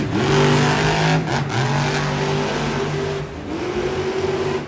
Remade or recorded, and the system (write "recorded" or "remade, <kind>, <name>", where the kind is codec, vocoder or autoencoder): recorded